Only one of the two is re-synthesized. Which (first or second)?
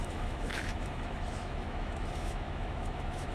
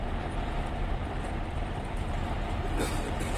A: first